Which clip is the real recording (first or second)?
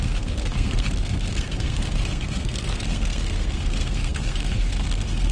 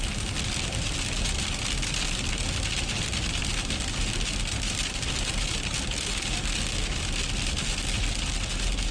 second